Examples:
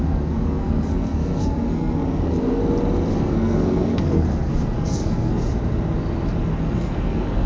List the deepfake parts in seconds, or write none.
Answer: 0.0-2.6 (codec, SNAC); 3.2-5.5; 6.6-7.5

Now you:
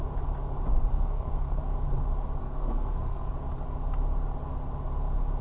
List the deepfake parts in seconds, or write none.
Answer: 0.9-1.6 (codec, SNAC); 2.4-3.3

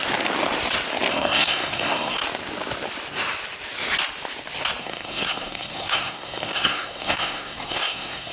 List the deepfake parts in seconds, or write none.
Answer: 1.1-2.2 (codec, SNAC); 4.8-8.3

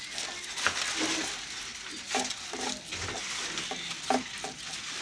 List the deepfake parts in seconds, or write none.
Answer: none

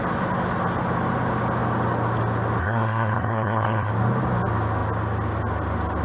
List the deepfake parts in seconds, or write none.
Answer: 2.6-3.9 (codec, SNAC)

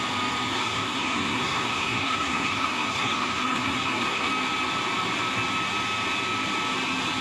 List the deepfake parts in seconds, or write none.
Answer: 0.5-4.3 (codec, SNAC)

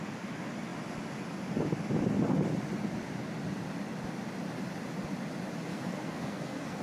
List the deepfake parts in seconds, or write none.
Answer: 5.7-6.8 (codec, SNAC)

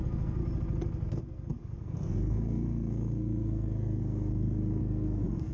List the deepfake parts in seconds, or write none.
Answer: 0.0-0.4 (codec, SNAC); 1.1-5.5